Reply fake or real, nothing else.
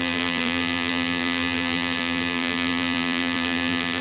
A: fake